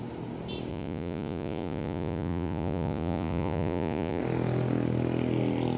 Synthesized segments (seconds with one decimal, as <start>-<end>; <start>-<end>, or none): 0.7-4.2